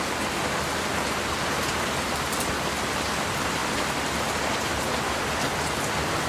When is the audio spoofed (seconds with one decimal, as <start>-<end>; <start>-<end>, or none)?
0.0-6.3